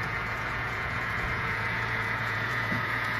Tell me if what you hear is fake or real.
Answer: fake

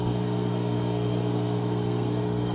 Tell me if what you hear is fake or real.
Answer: fake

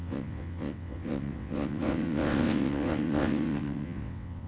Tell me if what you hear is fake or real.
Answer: fake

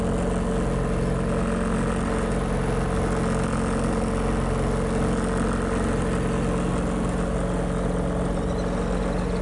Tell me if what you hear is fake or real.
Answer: real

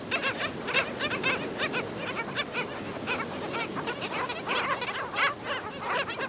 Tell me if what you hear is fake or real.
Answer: real